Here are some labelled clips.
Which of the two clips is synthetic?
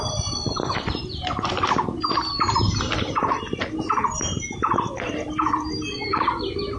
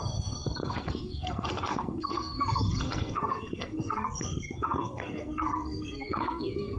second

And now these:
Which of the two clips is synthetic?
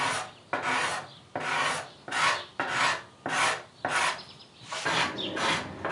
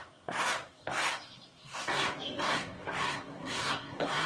second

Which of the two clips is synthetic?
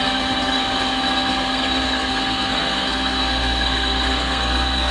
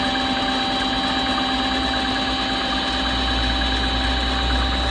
first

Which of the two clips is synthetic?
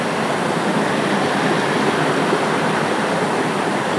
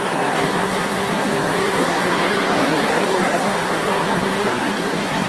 second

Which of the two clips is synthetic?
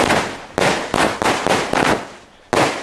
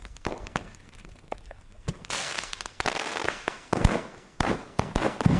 second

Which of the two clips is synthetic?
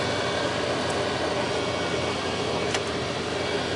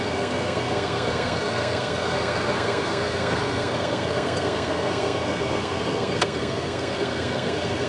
second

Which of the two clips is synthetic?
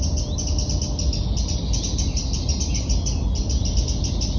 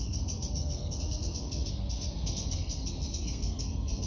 second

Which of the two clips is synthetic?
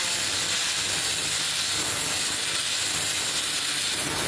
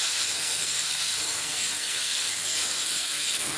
second